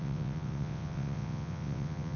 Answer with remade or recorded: remade